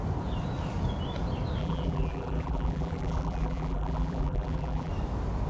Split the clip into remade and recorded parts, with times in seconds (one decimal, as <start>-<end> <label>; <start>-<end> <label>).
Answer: 0.0-1.6 recorded; 1.6-4.9 remade; 4.9-5.5 recorded